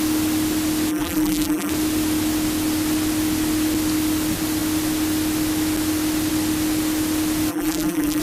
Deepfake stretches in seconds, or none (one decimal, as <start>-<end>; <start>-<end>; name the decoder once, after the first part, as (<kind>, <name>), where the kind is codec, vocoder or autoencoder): 0.9-1.7 (vocoder, BigVGAN v2); 7.5-8.2